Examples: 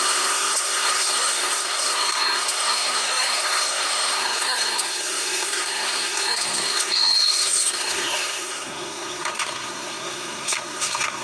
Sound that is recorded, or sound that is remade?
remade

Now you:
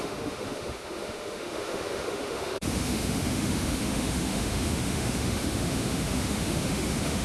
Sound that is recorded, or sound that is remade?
remade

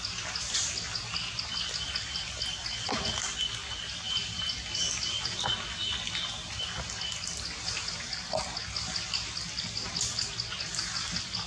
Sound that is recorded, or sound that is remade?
recorded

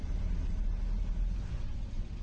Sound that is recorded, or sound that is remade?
recorded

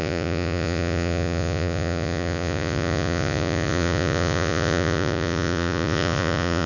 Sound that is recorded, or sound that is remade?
remade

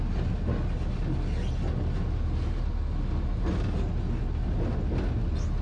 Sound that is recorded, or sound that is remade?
recorded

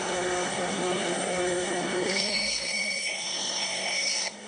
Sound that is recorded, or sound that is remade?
remade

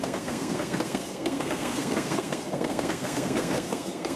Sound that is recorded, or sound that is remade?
remade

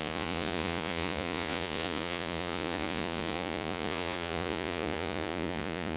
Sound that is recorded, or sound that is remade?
remade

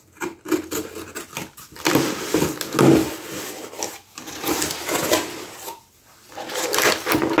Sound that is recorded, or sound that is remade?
recorded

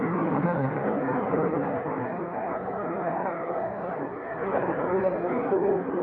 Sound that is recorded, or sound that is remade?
remade